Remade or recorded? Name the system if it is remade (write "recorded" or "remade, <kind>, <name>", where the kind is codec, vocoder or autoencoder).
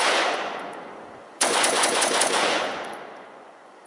remade, vocoder, Vocos